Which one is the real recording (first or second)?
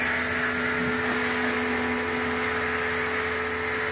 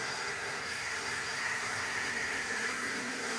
first